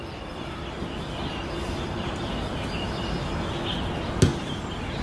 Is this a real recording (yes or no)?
yes